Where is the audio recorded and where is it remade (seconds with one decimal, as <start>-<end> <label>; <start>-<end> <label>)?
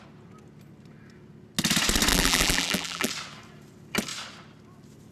0.0-2.1 recorded; 2.1-3.1 remade; 3.1-5.1 recorded